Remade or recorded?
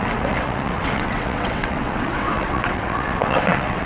remade